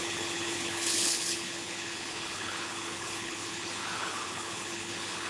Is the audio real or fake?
fake